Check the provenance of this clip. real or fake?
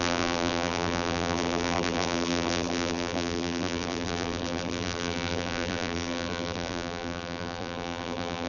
fake